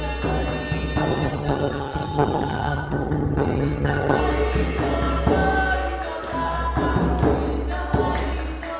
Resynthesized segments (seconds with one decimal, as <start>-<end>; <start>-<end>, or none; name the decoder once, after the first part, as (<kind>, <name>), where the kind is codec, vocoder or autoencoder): 1.0-4.2 (vocoder, HiFi-GAN)